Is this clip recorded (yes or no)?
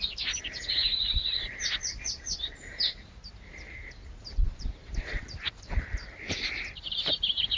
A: no